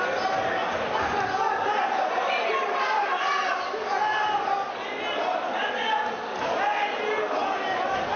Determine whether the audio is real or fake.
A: real